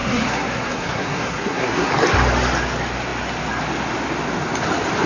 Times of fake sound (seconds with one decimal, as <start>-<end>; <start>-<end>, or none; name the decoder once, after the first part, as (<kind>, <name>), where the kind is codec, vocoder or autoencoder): 0.0-1.9 (codec, SNAC)

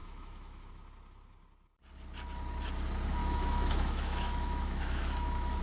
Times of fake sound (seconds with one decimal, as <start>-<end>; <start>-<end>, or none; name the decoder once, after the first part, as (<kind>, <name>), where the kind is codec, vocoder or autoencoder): 0.0-0.7 (autoencoder, DAC-VAE); 3.2-5.6

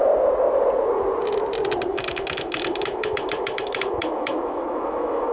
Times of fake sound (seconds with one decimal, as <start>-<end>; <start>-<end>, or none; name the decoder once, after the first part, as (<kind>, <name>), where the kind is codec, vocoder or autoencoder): 1.9-5.3 (autoencoder, DAC-VAE)

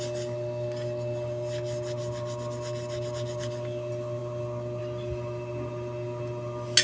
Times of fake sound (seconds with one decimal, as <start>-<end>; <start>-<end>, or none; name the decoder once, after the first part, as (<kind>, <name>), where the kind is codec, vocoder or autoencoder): none

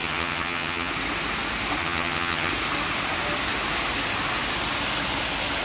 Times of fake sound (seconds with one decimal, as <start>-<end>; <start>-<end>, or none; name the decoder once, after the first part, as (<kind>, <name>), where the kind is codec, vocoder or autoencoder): 0.0-0.9 (vocoder, HiFi-GAN); 1.8-2.5

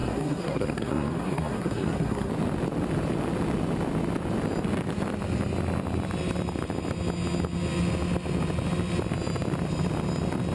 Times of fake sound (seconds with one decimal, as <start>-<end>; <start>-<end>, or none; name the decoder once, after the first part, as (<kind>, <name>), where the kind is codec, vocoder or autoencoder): 0.0-2.3 (codec, SNAC)

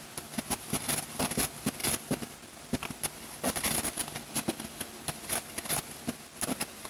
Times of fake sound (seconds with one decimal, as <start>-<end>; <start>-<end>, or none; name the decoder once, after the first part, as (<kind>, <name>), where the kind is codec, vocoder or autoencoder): 1.8-2.6 (vocoder, BigVGAN v2)

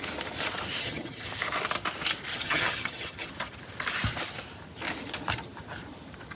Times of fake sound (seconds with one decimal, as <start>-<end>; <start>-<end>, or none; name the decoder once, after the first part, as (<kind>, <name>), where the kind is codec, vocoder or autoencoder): 0.8-1.3 (vocoder, HiFi-GAN); 2.3-3.3